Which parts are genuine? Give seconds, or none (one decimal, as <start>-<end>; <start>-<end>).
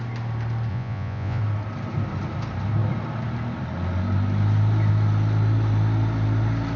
0.0-0.7; 1.4-6.8